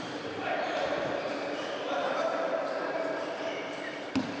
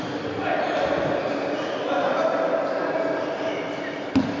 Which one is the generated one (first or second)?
first